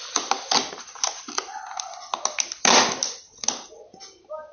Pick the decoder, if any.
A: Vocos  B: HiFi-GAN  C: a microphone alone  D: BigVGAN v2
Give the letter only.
C